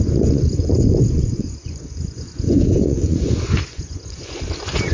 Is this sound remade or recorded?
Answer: remade